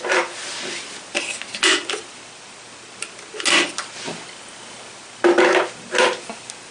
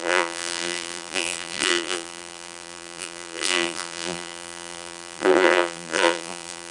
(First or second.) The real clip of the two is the first